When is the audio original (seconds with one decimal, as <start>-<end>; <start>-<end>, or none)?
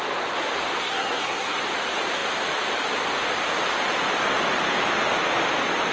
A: 0.0-0.8; 1.6-5.9